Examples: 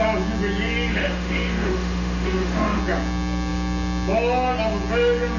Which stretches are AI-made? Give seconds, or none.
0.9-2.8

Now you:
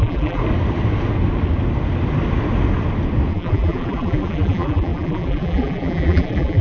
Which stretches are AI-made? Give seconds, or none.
0.0-0.4; 3.3-6.6

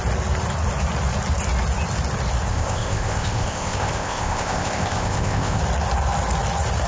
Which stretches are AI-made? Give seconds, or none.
2.5-5.6